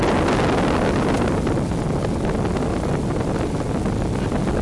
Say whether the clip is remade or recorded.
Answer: recorded